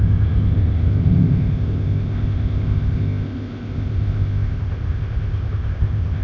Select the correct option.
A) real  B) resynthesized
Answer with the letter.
B